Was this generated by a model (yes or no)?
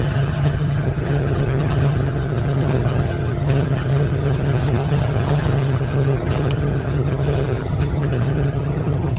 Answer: yes